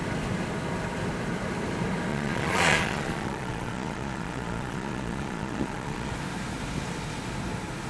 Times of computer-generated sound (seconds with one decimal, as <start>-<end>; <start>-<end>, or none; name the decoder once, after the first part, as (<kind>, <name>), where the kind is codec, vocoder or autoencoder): 2.1-6.1 (vocoder, Vocos)